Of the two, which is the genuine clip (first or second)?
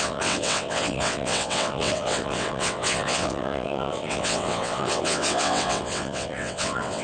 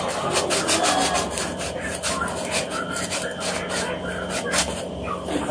second